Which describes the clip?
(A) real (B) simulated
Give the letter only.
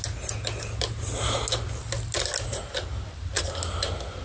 A